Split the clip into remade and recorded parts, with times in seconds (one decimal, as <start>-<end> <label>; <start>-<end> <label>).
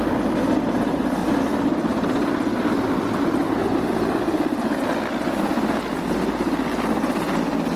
0.0-1.2 recorded; 1.2-5.8 remade; 5.8-7.8 recorded